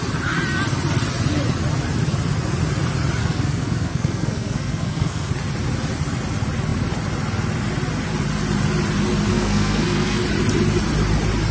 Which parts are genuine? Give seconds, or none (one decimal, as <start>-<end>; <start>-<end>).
0.0-3.2; 5.3-9.3; 10.2-11.5